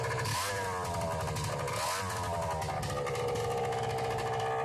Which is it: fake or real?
real